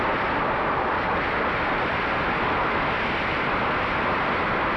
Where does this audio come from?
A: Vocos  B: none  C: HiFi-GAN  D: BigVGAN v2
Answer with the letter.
D